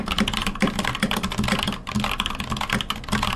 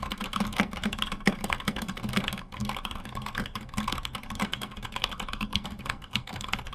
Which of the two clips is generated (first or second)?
second